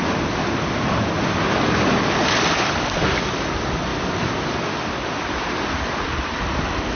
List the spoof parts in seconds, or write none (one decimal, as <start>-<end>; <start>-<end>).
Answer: none